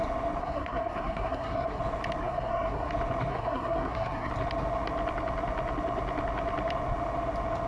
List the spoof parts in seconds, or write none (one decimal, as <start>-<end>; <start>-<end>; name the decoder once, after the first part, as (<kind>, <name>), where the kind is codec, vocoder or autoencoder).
0.4-1.8 (codec, SNAC); 2.2-2.9; 3.3-4.3